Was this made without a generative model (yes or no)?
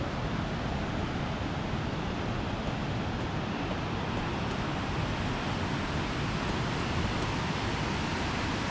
yes